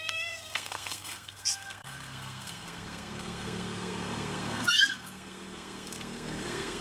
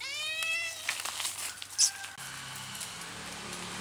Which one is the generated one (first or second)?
first